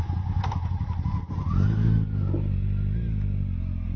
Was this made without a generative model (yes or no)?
yes